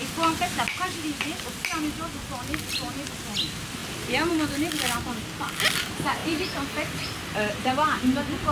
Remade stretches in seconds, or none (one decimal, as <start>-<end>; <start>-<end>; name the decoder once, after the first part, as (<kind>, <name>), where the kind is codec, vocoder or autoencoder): 6.2-8.0 (vocoder, BigVGAN v2)